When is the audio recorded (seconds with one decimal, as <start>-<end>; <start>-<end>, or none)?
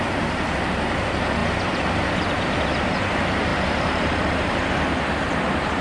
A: 0.0-5.8